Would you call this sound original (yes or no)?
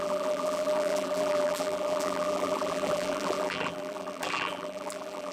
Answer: no